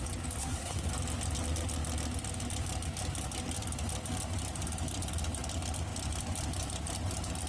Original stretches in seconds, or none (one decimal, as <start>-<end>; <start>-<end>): 0.0-0.4; 0.9-7.5